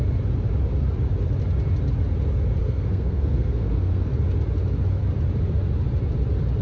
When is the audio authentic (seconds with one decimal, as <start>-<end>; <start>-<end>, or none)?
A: 0.0-2.6; 4.1-6.6